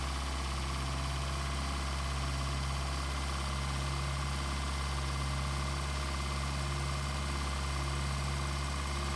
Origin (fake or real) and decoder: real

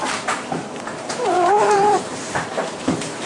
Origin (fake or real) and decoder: fake, vocoder, BigVGAN v2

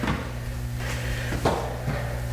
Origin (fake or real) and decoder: real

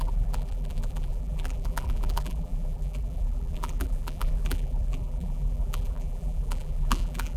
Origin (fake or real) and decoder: fake, vocoder, BigVGAN v2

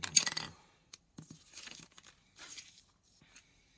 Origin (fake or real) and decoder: fake, vocoder, BigVGAN v2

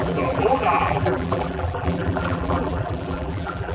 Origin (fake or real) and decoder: fake, vocoder, BigVGAN v2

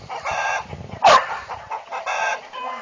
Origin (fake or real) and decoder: real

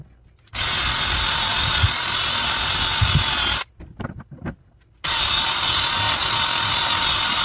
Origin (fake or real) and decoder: real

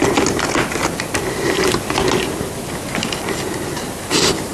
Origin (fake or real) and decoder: real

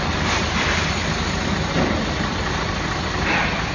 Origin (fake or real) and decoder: fake, vocoder, BigVGAN v2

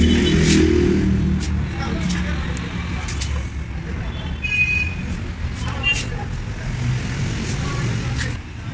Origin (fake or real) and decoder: real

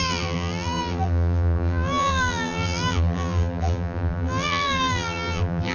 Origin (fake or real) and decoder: fake, vocoder, BigVGAN v2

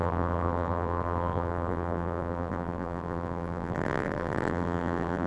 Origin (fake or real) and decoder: fake, vocoder, BigVGAN v2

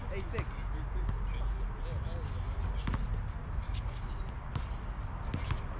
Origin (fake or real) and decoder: real